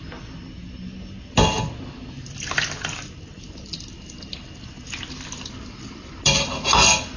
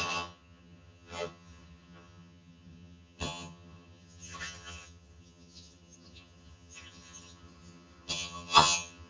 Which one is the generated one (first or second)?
second